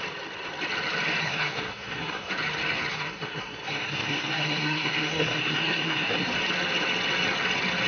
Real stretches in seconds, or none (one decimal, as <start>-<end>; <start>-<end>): 0.0-1.2; 2.3-2.9; 6.3-7.9